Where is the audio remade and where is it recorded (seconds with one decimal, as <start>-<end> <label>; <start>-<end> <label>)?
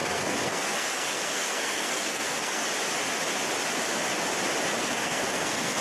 0.0-2.6 remade; 2.6-4.8 recorded; 4.8-5.8 remade